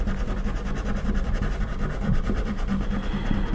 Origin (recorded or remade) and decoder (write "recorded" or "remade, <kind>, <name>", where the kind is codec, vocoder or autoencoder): recorded